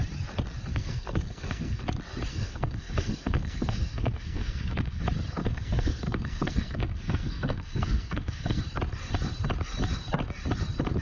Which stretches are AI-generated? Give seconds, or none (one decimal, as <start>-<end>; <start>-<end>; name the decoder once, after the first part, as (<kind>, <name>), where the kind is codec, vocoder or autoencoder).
0.7-1.8 (codec, SNAC); 2.3-5.0; 5.4-8.6